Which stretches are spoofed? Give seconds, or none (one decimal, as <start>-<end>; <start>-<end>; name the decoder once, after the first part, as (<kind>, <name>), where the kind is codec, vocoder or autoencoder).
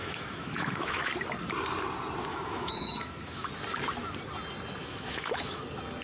0.0-1.1 (autoencoder, DAC-VAE); 2.3-3.5; 4.8-5.6